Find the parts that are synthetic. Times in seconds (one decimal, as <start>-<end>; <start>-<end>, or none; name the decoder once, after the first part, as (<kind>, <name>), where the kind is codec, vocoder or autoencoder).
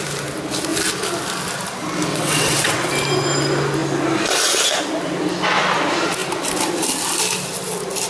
2.1-2.9 (vocoder, WaveNeXt)